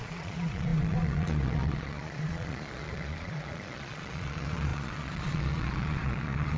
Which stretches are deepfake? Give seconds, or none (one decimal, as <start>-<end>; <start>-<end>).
0.0-6.6